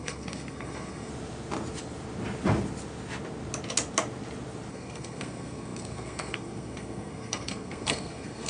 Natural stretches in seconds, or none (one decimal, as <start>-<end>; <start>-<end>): 1.1-4.7